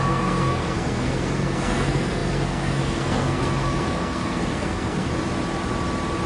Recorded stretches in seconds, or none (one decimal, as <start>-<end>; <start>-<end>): 5.1-6.3

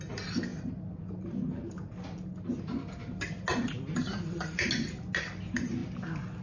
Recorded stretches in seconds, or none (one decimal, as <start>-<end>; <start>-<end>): 0.0-6.4